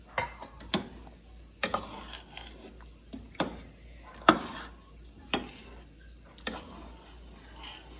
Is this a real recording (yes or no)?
yes